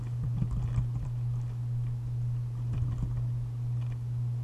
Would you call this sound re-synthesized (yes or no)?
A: no